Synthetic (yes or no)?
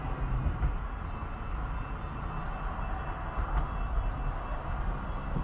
no